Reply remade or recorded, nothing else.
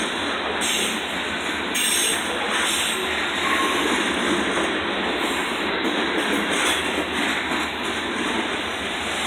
recorded